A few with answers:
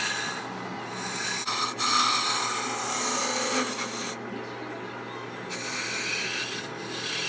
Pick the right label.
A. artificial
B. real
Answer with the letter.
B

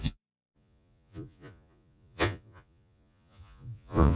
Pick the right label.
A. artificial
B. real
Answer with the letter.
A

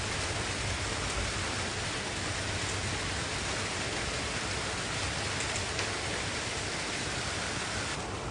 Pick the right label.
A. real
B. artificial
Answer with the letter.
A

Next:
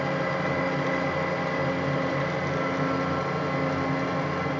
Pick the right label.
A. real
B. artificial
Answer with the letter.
A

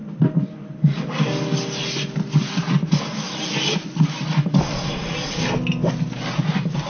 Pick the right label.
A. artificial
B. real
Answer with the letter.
B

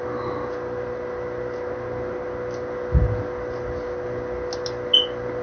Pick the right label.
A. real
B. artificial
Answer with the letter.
A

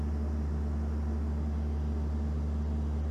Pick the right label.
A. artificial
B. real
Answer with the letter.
B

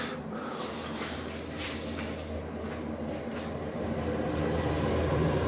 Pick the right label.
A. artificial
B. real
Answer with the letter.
B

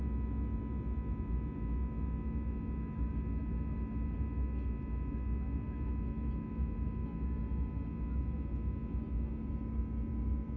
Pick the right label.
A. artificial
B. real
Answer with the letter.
B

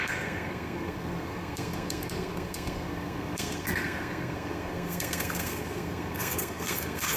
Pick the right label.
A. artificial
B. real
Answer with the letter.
A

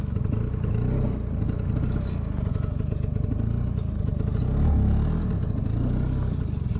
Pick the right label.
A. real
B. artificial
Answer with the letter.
A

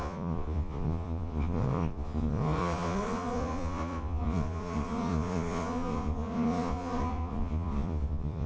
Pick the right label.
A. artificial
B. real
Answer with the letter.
A